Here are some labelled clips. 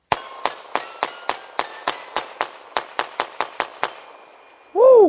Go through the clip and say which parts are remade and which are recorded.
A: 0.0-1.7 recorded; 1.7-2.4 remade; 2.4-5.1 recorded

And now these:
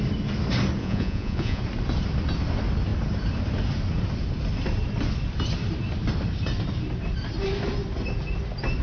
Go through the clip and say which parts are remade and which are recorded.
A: 0.0-0.8 recorded; 0.8-1.6 remade; 1.6-8.8 recorded

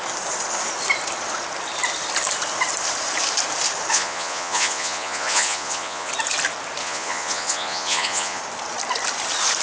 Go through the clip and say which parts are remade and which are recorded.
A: 0.0-3.9 recorded; 3.9-6.1 remade; 6.1-6.8 recorded; 6.8-8.4 remade; 8.4-9.6 recorded

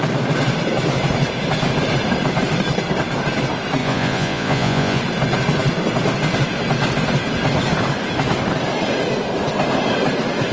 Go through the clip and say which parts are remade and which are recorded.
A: 0.0-3.8 recorded; 3.8-5.0 remade; 5.0-10.5 recorded

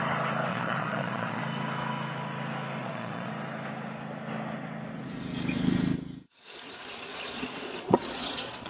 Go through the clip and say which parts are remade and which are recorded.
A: 0.0-0.5 recorded; 0.5-1.4 remade; 1.4-2.8 recorded; 2.8-3.3 remade; 3.3-7.1 recorded; 7.1-8.7 remade

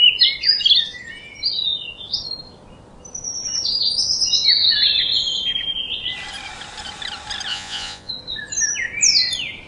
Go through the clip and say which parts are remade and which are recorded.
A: 0.0-7.5 recorded; 7.5-8.1 remade; 8.1-9.7 recorded